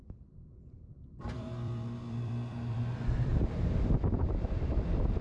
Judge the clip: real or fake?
fake